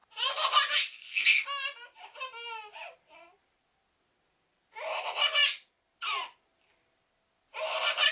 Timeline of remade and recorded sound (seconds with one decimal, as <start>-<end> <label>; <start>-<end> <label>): 0.0-8.1 recorded